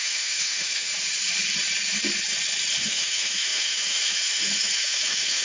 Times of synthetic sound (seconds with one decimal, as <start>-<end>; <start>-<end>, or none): 0.0-0.9; 2.8-5.4